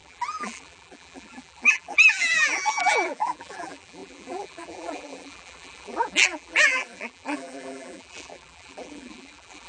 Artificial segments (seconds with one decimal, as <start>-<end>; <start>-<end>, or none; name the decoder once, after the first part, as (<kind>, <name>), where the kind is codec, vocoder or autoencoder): 0.0-9.7 (vocoder, BigVGAN v2)